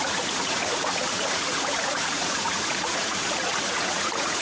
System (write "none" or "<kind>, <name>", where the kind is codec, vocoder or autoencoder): vocoder, Vocos